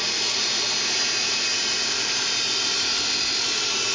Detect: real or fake fake